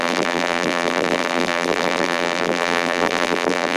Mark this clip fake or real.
fake